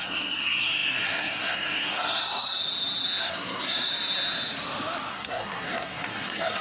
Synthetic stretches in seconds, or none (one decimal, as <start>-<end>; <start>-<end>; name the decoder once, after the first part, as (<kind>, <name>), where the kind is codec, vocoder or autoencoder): 0.0-2.6 (codec, SNAC); 3.2-3.9; 5.1-6.6